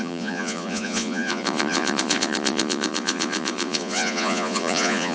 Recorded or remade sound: remade